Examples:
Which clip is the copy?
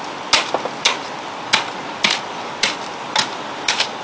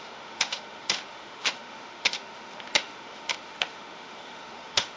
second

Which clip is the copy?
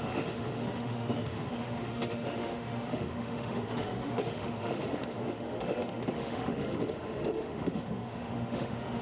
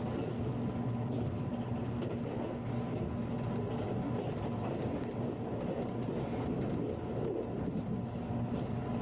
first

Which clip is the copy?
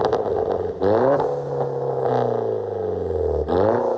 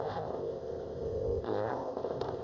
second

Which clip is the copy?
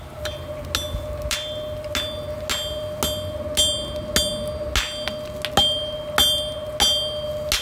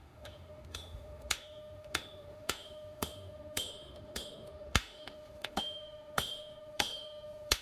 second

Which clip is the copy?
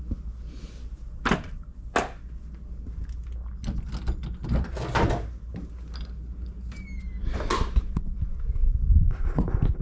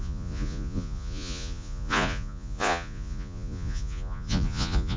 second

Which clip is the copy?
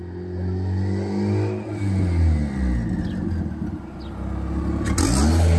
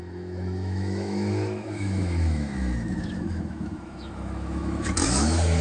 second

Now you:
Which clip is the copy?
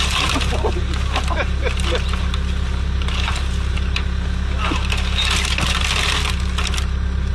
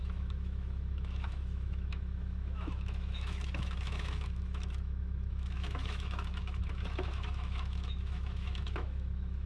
second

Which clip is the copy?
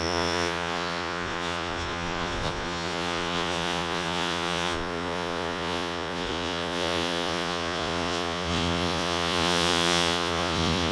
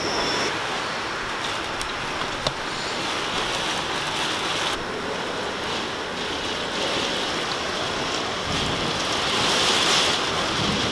first